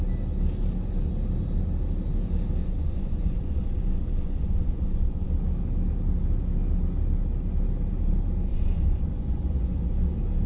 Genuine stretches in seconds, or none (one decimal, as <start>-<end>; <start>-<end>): 0.0-2.6; 5.3-8.5; 9.9-10.5